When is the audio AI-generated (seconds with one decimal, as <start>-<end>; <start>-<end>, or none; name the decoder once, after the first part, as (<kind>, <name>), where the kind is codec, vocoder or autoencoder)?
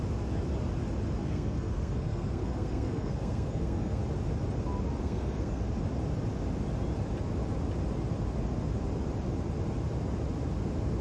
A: 1.2-4.0 (codec, SNAC); 5.0-5.6